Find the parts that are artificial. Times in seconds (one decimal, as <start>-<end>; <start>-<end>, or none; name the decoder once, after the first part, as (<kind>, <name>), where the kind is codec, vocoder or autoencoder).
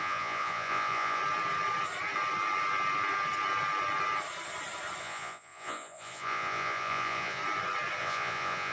0.0-1.2 (vocoder, Vocos); 5.0-7.4; 8.0-8.7